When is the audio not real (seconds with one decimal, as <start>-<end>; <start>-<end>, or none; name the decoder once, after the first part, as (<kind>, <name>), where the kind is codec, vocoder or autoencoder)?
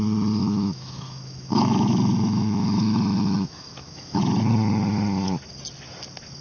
0.4-4.2 (autoencoder, DAC-VAE)